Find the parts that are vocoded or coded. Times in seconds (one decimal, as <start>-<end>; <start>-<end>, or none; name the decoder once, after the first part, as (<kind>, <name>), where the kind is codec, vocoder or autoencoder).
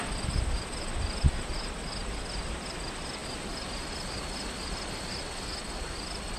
none